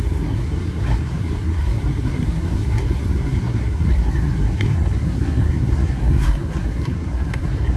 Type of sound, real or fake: fake